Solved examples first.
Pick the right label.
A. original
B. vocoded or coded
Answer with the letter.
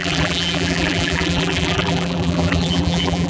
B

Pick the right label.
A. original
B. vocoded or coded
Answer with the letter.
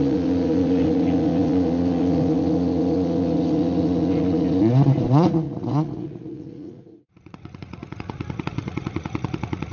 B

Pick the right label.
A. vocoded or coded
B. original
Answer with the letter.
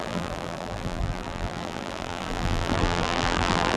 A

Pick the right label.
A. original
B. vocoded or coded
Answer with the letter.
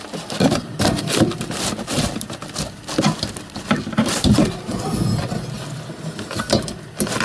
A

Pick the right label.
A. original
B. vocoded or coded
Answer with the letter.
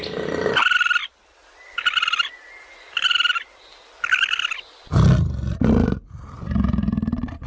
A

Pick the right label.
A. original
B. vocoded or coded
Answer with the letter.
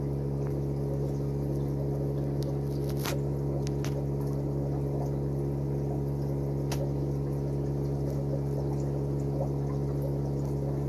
A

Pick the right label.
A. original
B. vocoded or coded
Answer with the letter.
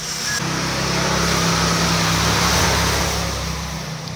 A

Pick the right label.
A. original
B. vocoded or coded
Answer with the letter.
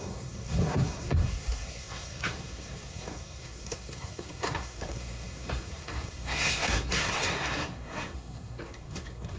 B